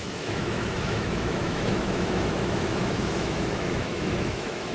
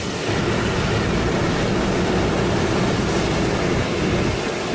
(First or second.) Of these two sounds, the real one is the second